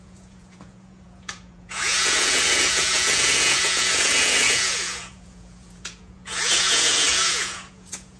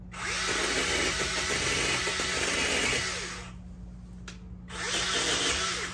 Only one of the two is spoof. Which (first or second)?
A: first